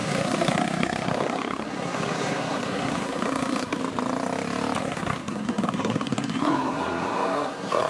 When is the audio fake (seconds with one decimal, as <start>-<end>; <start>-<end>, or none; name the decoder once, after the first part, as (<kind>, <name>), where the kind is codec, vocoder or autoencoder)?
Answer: 0.0-3.8 (codec, SNAC); 4.8-7.9